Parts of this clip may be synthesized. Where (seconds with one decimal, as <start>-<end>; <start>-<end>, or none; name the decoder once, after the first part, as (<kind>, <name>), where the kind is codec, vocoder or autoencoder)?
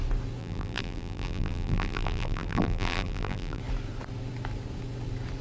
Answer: 0.4-3.6 (vocoder, BigVGAN v2)